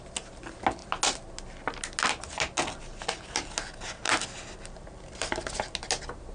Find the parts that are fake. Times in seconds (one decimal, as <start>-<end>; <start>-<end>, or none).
none